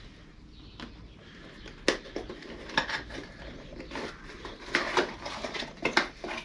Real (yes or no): yes